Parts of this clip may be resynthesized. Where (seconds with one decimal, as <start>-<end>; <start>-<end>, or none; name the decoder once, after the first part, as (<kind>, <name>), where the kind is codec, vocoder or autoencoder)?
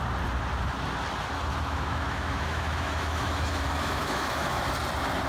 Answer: 1.5-4.7 (autoencoder, DAC-VAE)